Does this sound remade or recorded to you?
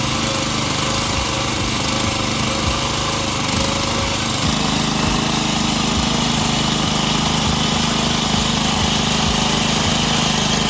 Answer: recorded